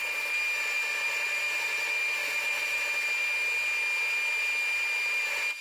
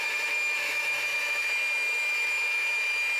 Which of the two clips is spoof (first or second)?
second